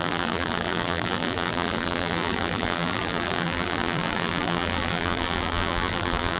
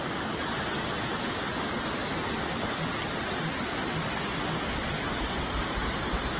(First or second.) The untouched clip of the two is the second